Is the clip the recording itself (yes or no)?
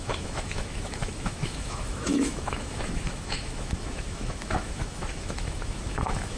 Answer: no